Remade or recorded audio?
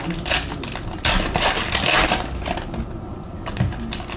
recorded